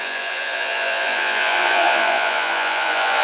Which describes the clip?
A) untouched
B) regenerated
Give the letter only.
B